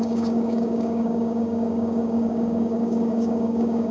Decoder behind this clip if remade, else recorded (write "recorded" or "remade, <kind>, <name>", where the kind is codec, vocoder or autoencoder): remade, codec, DAC